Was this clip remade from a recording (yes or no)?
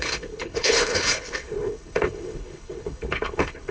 yes